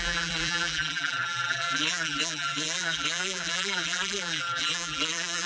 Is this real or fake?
fake